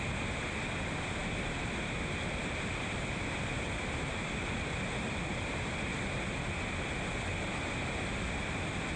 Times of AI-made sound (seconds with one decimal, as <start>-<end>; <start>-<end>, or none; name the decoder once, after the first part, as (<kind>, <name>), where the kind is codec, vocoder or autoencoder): none